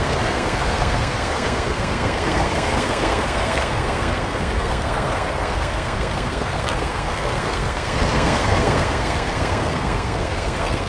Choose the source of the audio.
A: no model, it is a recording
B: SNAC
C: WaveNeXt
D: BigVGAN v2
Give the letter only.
B